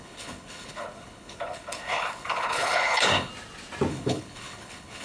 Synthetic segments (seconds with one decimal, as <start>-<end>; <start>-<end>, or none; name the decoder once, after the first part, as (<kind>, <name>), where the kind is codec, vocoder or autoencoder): 0.0-3.3 (codec, HILCodec); 3.9-5.0